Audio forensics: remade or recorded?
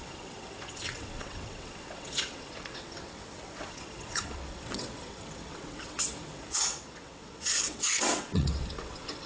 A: remade